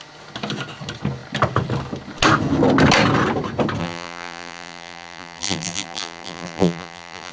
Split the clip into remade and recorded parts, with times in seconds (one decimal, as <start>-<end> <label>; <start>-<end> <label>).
0.0-3.8 recorded; 3.8-7.3 remade